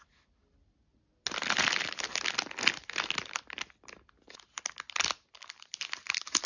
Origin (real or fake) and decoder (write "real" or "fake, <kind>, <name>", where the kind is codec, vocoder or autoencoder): real